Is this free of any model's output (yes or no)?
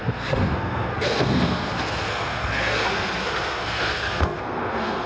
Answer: no